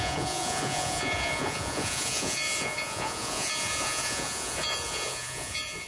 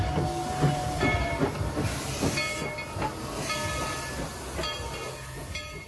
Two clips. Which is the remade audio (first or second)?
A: first